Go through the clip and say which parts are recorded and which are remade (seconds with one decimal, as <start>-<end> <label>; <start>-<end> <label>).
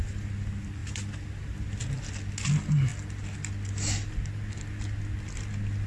0.0-5.9 recorded